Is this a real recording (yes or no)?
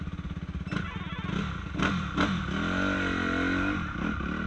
yes